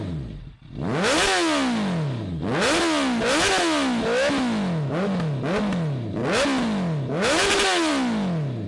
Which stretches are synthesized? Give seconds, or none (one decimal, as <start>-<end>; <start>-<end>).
none